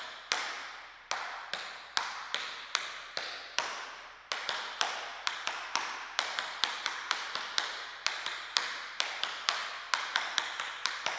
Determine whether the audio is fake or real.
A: real